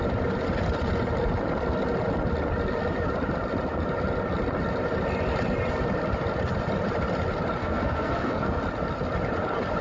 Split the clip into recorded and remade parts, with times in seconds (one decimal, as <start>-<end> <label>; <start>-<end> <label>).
0.0-7.6 recorded; 7.6-8.6 remade; 8.6-9.8 recorded